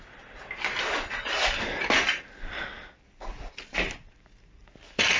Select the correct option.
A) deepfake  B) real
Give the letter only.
B